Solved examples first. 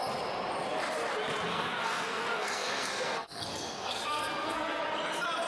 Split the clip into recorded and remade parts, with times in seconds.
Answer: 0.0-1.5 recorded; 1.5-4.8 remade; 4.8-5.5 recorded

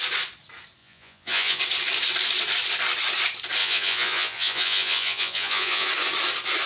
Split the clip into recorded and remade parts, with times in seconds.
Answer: 0.0-0.8 recorded; 0.8-1.6 remade; 1.6-3.6 recorded; 3.6-5.9 remade; 5.9-6.7 recorded

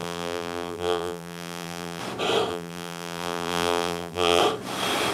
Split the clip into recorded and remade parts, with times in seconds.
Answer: 0.0-2.0 remade; 2.0-2.5 recorded; 2.5-4.4 remade; 4.4-5.1 recorded

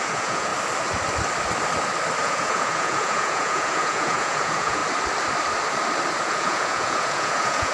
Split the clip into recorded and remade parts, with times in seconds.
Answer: 0.0-0.5 remade; 0.5-2.2 recorded; 2.2-4.8 remade; 4.8-6.2 recorded; 6.2-7.7 remade

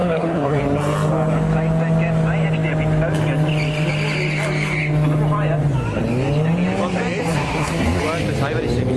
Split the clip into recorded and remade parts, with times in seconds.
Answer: 0.0-0.6 remade; 0.6-7.3 recorded; 7.3-8.0 remade; 8.0-9.0 recorded

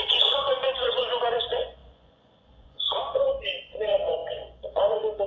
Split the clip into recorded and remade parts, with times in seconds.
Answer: 0.0-5.3 remade

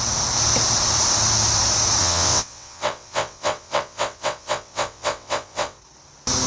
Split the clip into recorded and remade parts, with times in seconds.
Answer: 0.0-2.0 recorded; 2.0-5.8 remade; 5.8-6.5 recorded

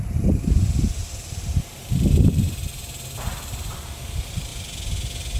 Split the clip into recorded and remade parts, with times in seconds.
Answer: 0.0-1.0 remade; 1.0-1.8 recorded; 1.8-4.5 remade; 4.5-5.4 recorded